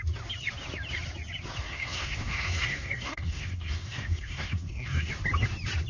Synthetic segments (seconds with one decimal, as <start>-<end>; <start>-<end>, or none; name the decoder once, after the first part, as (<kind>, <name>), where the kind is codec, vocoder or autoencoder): 1.6-5.1 (codec, SNAC)